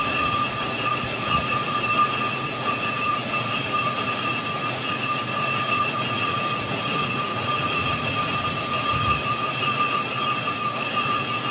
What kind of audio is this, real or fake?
fake